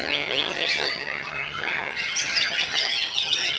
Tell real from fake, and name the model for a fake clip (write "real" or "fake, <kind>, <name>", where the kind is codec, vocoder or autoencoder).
fake, vocoder, HiFi-GAN